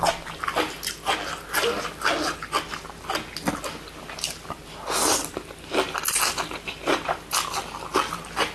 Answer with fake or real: real